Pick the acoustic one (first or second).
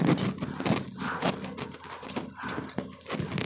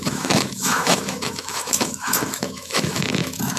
first